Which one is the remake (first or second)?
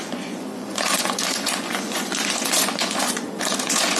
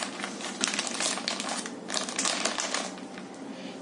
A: first